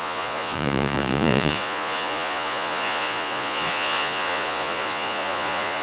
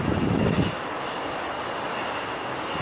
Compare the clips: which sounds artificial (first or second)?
first